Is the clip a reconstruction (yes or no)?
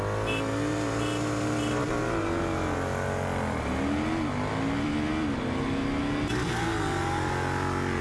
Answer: no